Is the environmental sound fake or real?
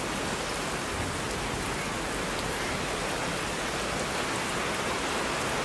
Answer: real